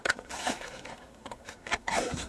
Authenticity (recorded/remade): remade